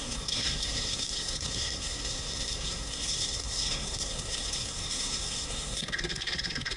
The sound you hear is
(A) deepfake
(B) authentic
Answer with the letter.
A